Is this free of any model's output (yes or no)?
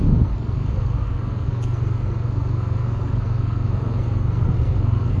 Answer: no